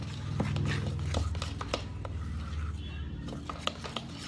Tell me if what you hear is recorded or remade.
recorded